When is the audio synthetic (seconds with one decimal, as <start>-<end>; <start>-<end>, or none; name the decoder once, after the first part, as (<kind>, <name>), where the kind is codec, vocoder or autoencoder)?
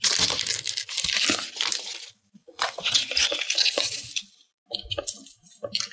2.4-3.1 (vocoder, WaveNeXt); 3.6-4.1